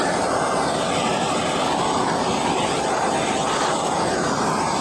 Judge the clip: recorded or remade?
recorded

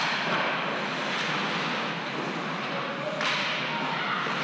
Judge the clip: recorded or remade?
recorded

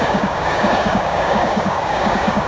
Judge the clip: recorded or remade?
remade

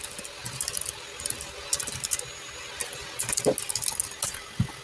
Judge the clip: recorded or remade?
recorded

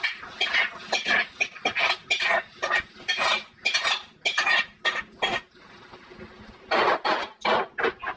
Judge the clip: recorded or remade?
recorded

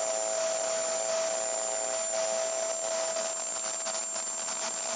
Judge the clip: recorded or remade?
recorded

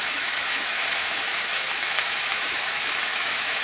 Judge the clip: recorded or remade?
remade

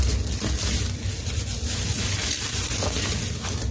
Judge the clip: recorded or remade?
recorded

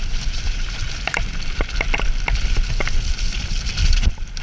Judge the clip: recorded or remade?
recorded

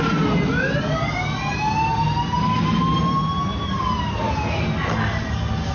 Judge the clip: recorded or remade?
recorded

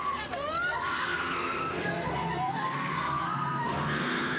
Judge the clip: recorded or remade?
remade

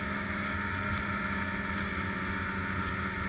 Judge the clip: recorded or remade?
recorded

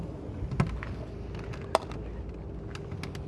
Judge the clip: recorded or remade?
recorded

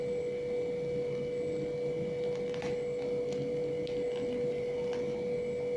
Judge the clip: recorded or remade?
recorded